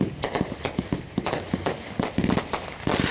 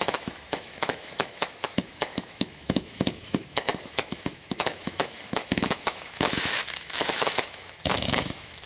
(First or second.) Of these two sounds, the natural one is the first